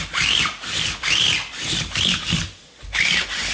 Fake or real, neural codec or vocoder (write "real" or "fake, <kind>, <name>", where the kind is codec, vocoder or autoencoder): real